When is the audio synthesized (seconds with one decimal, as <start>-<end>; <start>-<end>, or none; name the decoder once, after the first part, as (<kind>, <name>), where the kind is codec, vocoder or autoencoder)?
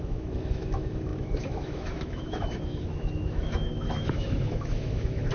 0.0-5.3 (autoencoder, DAC-VAE)